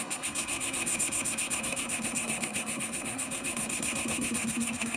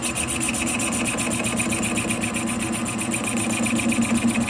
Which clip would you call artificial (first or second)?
first